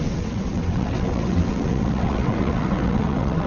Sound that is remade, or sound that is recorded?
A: remade